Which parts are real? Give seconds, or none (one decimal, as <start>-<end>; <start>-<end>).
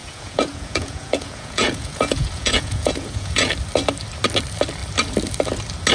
3.5-5.9